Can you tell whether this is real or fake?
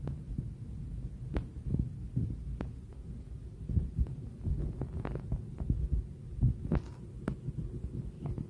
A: real